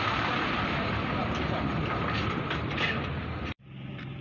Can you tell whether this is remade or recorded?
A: remade